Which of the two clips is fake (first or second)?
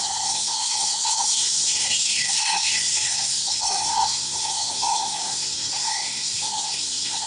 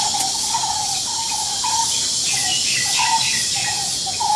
first